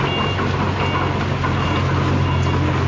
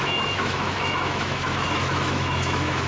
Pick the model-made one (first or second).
second